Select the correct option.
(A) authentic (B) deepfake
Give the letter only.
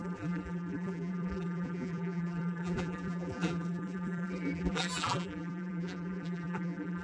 B